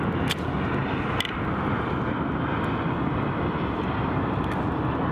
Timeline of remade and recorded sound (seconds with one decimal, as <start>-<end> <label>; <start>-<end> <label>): 0.0-5.1 recorded

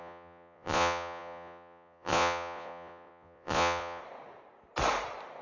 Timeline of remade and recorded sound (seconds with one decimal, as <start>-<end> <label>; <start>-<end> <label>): 0.0-4.0 remade; 4.0-5.4 recorded

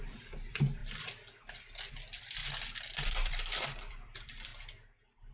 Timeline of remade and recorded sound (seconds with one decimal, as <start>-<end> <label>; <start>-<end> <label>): 0.0-0.8 remade; 0.8-1.8 recorded; 1.8-2.4 remade; 2.4-3.1 recorded; 3.1-4.5 remade; 4.5-5.3 recorded

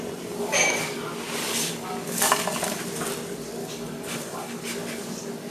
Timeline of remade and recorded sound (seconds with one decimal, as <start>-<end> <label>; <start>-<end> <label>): 0.0-0.4 recorded; 0.4-1.0 remade; 1.0-1.4 recorded; 1.4-2.8 remade; 2.8-3.6 recorded; 3.6-5.5 remade

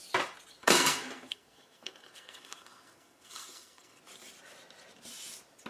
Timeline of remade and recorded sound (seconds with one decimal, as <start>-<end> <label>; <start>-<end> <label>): 0.0-0.6 recorded; 0.6-4.0 remade; 4.0-5.7 recorded